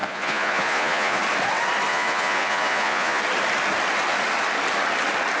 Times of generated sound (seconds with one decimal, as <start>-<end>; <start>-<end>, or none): 0.0-1.2; 1.9-3.2